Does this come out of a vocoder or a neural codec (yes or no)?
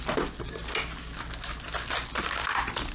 no